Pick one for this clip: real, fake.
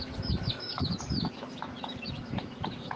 fake